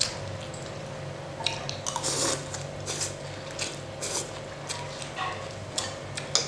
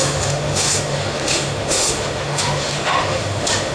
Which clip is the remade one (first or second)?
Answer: second